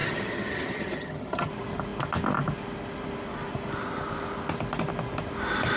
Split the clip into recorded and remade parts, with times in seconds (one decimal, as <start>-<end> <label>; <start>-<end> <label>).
0.0-1.5 remade; 1.5-5.8 recorded